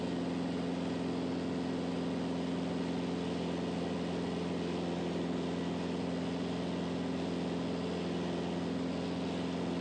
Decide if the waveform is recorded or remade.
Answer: recorded